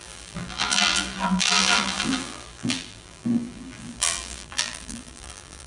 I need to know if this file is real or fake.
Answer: fake